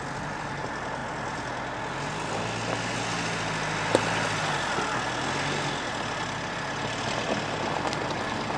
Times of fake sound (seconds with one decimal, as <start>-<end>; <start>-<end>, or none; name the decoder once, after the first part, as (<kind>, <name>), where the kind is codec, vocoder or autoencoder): none